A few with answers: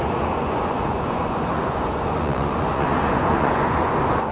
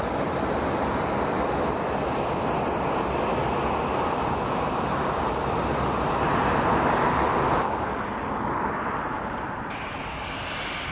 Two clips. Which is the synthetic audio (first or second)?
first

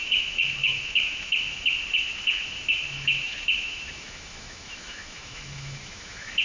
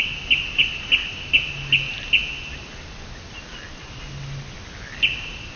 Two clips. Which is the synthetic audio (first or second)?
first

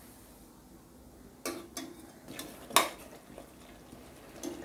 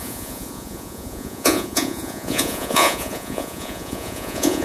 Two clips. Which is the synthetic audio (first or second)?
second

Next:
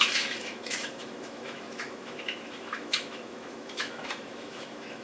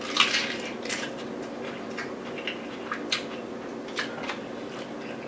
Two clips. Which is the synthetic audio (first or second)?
first